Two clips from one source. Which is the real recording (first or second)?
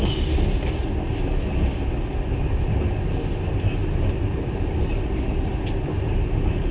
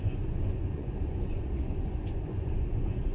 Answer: first